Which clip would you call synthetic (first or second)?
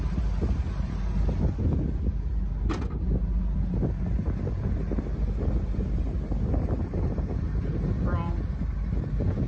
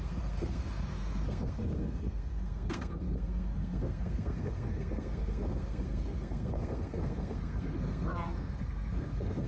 second